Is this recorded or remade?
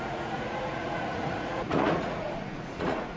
remade